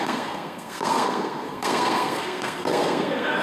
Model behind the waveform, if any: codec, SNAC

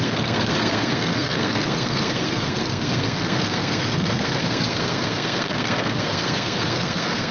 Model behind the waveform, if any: codec, SNAC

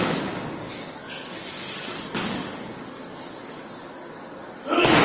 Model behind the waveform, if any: codec, DAC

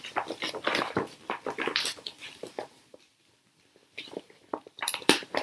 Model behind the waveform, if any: vocoder, BigVGAN v2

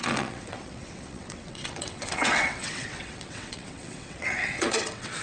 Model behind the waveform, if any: vocoder, WaveNeXt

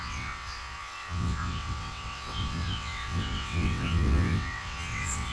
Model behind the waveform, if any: vocoder, WaveNeXt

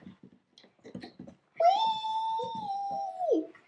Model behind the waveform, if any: none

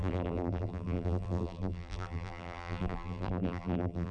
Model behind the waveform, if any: vocoder, BigVGAN v2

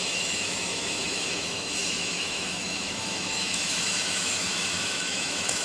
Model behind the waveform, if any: autoencoder, DAC-VAE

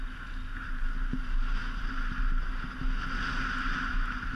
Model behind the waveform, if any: none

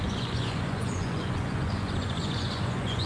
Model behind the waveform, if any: vocoder, Vocos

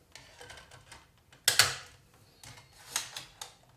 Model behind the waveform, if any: none